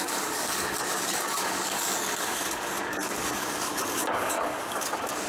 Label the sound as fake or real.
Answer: fake